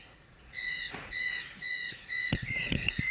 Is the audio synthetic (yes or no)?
yes